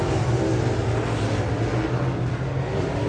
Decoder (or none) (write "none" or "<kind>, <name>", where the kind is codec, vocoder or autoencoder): none